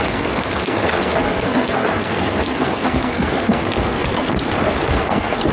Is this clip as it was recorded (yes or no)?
no